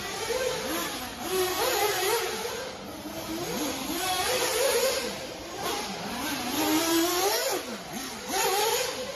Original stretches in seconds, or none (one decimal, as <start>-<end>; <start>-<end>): 0.0-4.5; 5.4-9.2